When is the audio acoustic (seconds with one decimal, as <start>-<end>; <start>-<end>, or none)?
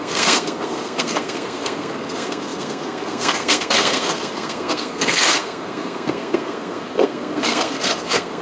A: none